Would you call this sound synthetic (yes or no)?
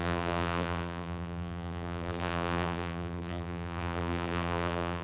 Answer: yes